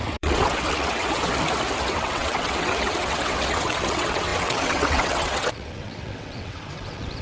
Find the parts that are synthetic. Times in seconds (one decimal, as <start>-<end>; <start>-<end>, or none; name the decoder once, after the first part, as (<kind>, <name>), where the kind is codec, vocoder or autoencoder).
0.0-1.3 (vocoder, WaveNeXt); 1.8-7.2